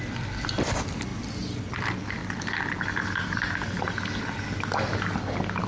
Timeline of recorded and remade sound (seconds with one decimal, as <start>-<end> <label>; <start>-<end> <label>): 0.0-5.7 recorded